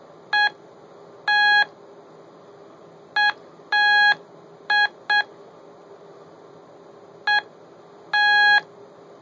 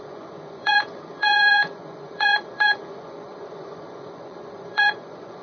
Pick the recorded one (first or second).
first